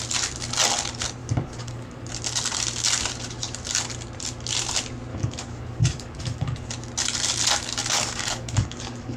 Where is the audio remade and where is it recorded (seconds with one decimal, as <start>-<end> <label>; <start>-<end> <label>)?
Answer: 0.0-1.2 recorded; 1.2-2.1 remade; 2.1-5.1 recorded; 5.1-6.7 remade; 6.7-7.8 recorded; 7.8-9.2 remade